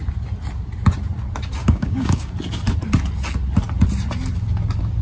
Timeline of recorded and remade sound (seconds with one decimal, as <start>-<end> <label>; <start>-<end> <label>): 0.0-1.6 recorded; 1.6-2.3 remade; 2.3-5.0 recorded